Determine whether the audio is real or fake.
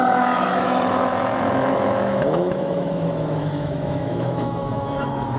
fake